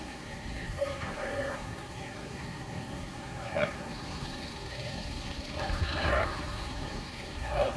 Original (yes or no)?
no